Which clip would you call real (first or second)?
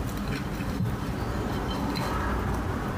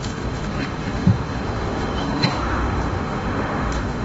first